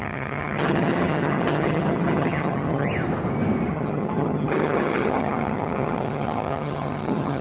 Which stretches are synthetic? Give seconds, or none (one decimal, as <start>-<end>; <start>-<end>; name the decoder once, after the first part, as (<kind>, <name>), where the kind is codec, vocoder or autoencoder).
0.0-2.9 (vocoder, HiFi-GAN); 3.7-7.4